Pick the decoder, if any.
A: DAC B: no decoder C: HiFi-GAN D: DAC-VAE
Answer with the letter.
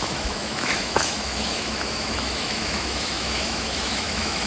D